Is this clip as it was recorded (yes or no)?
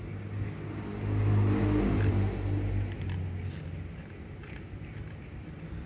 yes